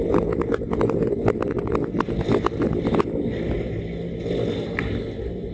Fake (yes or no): no